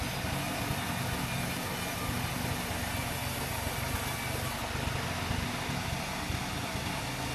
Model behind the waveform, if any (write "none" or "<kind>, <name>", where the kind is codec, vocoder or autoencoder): none